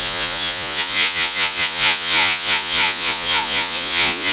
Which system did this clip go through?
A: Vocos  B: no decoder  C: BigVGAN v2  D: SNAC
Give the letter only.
A